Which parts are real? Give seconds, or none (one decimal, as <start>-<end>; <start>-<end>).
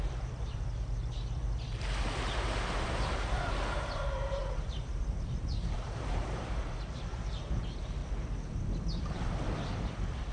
8.0-9.0